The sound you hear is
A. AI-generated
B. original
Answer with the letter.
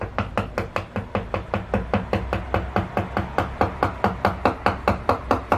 B